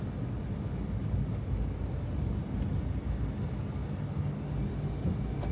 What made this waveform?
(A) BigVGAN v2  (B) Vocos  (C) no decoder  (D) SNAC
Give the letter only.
C